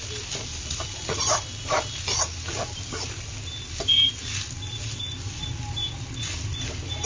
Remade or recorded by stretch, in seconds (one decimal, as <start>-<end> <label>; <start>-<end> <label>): 0.0-7.1 recorded